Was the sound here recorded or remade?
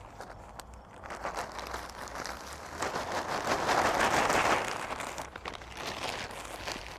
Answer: recorded